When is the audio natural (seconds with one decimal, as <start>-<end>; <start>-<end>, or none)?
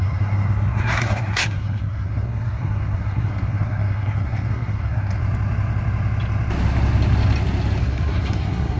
5.2-7.8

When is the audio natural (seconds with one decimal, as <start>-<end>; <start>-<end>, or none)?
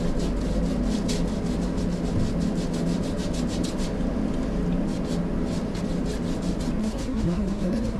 0.0-6.8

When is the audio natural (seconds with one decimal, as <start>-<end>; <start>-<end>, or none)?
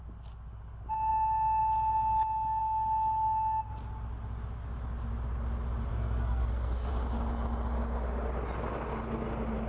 0.0-5.9; 6.9-9.7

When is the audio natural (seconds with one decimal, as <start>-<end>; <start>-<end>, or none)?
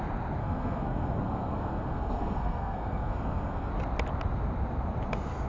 0.0-0.4; 3.7-5.5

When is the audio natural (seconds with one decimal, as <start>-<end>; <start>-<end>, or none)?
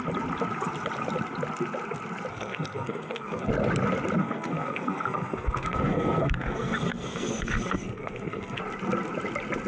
0.0-2.3; 3.5-4.2; 8.6-9.7